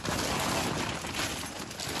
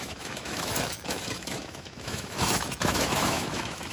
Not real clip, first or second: second